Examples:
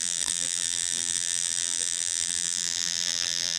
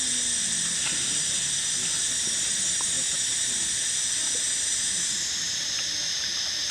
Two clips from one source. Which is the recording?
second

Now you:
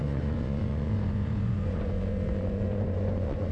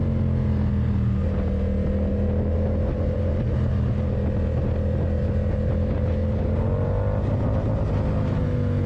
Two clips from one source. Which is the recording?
second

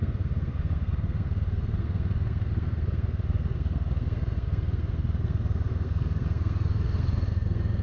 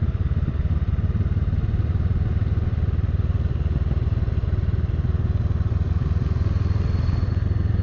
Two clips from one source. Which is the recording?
second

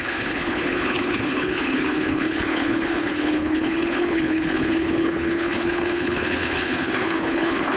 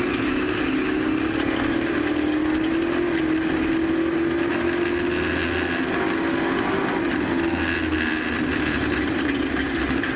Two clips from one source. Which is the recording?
second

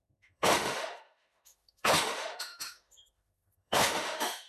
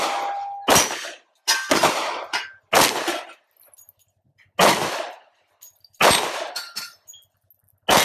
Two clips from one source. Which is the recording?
second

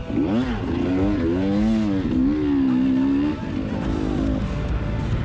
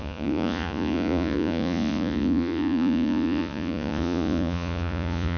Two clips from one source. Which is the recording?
first